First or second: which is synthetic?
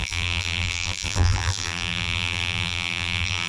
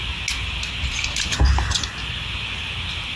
first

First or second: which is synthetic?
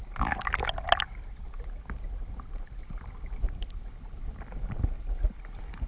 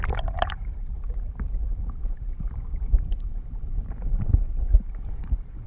second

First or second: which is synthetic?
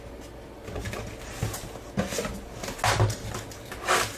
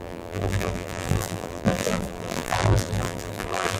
second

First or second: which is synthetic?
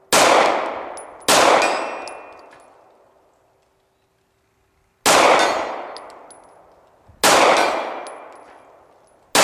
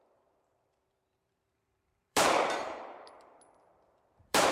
second